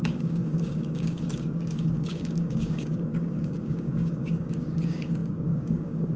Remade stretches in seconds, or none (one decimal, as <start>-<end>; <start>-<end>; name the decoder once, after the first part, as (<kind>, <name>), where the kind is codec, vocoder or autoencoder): 0.0-6.2 (codec, DAC)